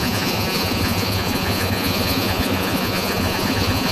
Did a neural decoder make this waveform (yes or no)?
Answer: yes